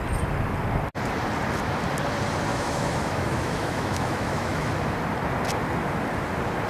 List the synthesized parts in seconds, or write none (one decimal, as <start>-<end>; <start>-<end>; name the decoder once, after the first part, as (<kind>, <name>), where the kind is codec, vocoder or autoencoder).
2.5-4.7 (autoencoder, DAC-VAE)